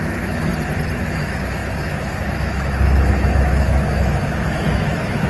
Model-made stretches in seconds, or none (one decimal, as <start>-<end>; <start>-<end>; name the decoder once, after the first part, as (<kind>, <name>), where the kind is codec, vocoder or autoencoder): 0.0-0.5 (autoencoder, DAC-VAE); 1.0-5.3